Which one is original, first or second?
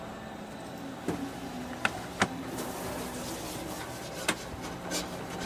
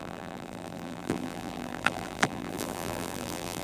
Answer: first